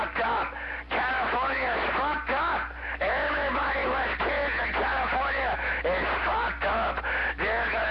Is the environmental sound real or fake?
real